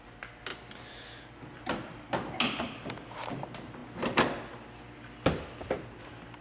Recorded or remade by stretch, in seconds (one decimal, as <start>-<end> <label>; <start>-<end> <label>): 0.0-6.4 recorded